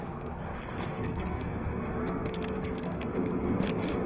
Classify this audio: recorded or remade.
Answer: remade